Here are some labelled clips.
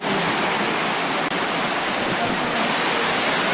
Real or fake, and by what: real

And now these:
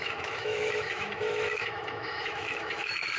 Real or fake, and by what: fake, autoencoder, DAC-VAE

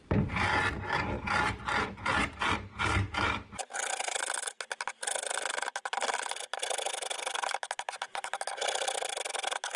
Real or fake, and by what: real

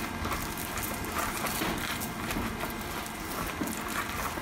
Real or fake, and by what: real